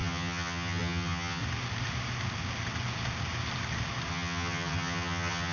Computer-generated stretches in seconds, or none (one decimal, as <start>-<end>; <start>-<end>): 0.0-1.4; 4.1-5.5